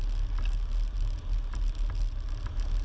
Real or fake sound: real